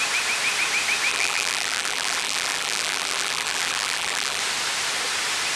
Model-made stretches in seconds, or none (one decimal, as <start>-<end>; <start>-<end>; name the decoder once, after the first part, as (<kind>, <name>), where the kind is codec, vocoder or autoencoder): 1.1-4.4 (vocoder, BigVGAN v2)

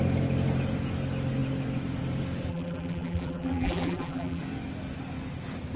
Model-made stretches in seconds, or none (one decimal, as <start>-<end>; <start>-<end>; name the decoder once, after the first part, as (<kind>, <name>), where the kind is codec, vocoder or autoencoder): 2.5-4.4 (vocoder, BigVGAN v2)

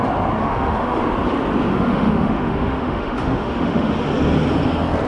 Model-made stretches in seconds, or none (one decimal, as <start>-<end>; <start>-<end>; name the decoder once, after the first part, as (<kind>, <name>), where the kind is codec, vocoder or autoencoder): 0.4-1.0 (autoencoder, DAC-VAE); 1.7-3.9

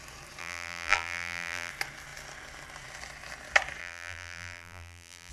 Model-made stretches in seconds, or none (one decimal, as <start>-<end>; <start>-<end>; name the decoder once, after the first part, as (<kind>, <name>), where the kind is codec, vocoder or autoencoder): 0.4-1.7 (vocoder, BigVGAN v2); 3.8-5.3

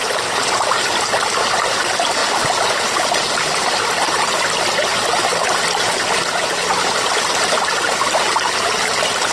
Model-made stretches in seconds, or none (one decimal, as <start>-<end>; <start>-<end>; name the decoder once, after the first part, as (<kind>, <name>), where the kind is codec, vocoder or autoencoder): none

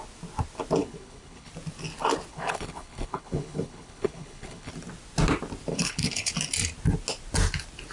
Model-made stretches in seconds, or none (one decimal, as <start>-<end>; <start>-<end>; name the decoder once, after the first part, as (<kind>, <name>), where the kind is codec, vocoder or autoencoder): 0.8-1.5 (codec, HILCodec); 2.3-4.7; 5.7-6.3

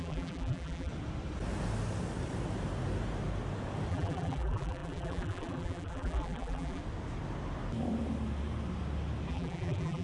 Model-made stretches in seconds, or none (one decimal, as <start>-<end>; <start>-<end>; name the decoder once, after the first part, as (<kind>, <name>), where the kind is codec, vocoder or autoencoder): 0.0-0.9 (vocoder, BigVGAN v2); 3.9-6.8; 9.3-10.0

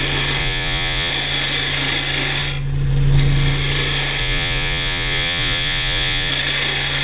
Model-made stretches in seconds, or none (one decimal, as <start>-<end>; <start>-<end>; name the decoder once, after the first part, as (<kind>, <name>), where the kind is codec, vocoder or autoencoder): 0.4-1.1 (vocoder, Vocos); 4.2-6.3